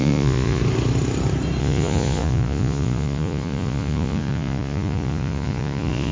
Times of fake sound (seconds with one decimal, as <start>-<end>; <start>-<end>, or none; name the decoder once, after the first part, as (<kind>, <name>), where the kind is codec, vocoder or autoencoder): 0.0-0.6 (vocoder, Vocos); 1.6-6.1